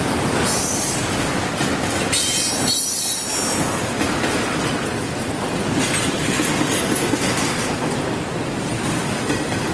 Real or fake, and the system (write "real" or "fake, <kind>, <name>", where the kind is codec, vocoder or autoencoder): real